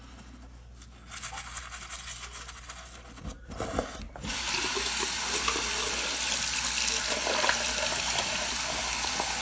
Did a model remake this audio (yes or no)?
no